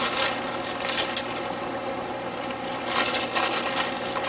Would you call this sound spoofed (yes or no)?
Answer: no